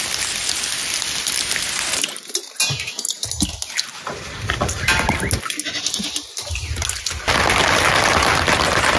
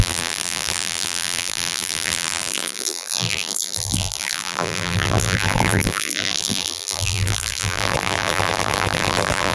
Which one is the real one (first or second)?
first